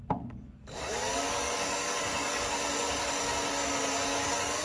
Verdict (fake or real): fake